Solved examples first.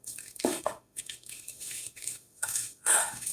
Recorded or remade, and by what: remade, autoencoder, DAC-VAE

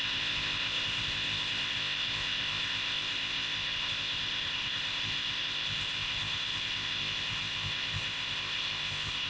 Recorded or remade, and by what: remade, codec, ZipCodec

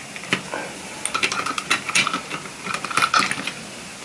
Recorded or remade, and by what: recorded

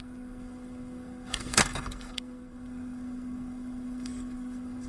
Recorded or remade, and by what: remade, codec, SNAC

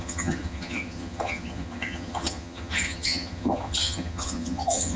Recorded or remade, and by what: remade, vocoder, HiFi-GAN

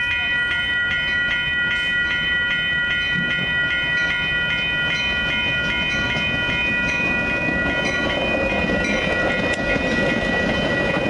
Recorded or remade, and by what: recorded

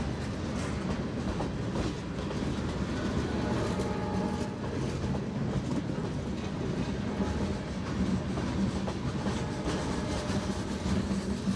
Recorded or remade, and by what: recorded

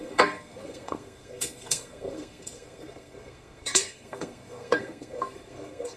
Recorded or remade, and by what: remade, codec, SNAC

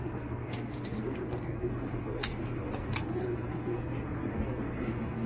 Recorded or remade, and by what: remade, codec, SNAC